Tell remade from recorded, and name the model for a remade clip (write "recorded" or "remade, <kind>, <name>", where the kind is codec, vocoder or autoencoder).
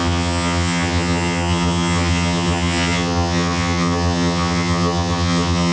remade, vocoder, HiFi-GAN